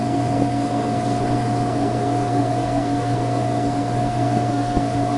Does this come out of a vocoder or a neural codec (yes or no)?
yes